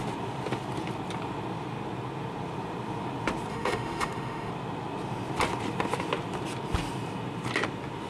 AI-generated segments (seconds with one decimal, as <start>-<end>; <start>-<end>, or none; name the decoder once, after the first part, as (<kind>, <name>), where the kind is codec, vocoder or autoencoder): 3.5-4.5 (autoencoder, DAC-VAE)